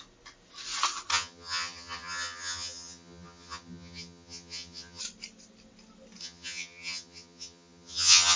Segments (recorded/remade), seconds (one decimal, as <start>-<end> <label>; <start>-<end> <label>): 0.0-1.1 recorded; 1.1-5.0 remade; 5.0-6.2 recorded; 6.2-8.4 remade

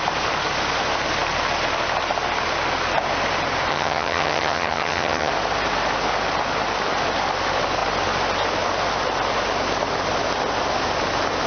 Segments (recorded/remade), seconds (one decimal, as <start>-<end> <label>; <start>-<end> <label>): 0.0-3.7 recorded; 3.7-5.3 remade; 5.3-11.5 recorded